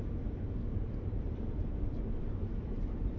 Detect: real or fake fake